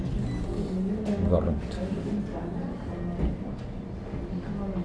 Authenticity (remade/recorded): recorded